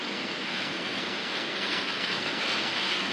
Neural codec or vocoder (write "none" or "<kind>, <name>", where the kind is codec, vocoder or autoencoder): codec, SNAC